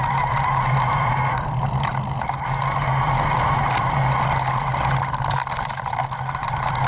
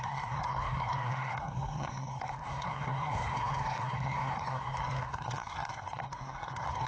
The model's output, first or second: second